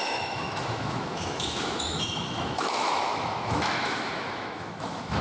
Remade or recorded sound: remade